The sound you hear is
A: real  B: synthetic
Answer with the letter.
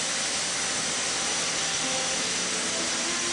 A